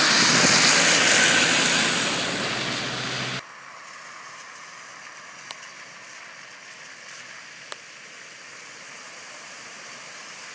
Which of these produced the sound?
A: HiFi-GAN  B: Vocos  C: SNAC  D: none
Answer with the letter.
D